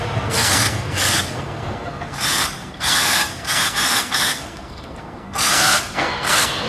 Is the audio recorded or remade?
remade